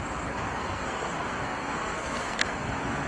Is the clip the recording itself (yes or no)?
no